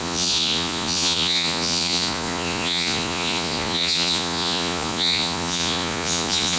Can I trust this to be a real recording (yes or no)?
no